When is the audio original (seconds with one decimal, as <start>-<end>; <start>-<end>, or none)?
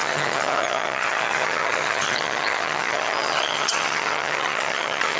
none